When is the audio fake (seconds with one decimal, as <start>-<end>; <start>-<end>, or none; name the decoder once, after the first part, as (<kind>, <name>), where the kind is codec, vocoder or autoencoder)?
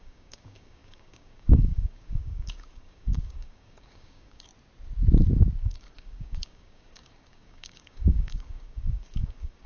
0.0-4.5 (codec, DAC); 5.6-9.7